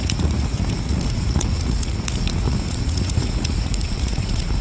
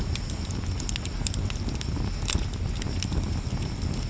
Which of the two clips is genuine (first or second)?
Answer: second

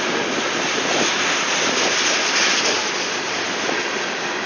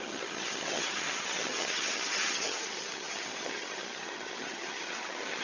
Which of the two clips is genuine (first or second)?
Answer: first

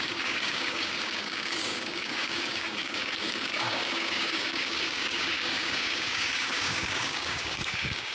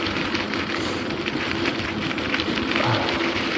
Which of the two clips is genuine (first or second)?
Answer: second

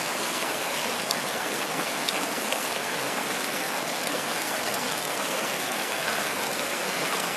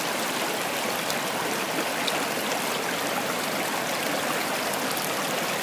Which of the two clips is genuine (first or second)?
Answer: second